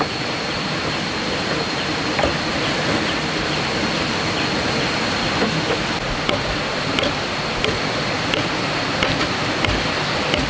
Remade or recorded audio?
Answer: recorded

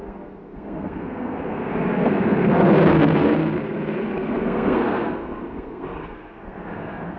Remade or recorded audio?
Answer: remade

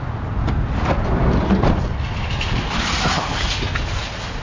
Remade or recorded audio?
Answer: recorded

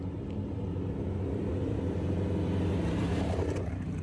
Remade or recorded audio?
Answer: recorded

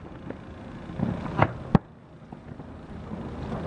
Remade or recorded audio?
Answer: recorded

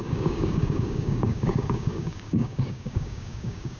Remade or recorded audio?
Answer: remade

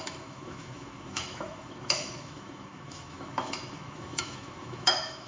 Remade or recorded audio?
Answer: remade